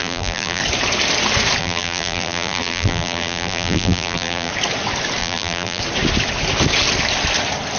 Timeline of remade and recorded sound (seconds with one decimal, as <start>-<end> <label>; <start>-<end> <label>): 0.0-0.6 remade; 0.6-1.6 recorded; 1.6-4.5 remade; 4.5-5.2 recorded; 5.2-5.8 remade; 5.8-7.8 recorded